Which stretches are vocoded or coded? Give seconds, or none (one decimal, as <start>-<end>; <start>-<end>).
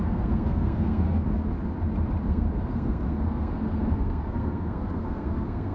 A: 0.0-1.3; 2.3-5.7